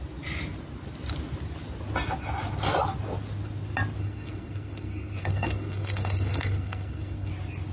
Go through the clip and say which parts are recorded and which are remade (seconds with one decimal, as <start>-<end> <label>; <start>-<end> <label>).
0.0-4.0 recorded; 4.0-7.3 remade; 7.3-7.7 recorded